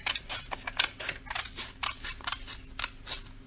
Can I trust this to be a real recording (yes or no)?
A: yes